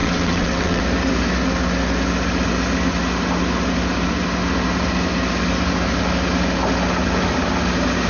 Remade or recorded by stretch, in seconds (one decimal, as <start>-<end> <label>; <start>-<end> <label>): 0.0-0.8 remade; 0.8-8.1 recorded